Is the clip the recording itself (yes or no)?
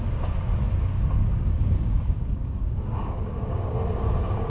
no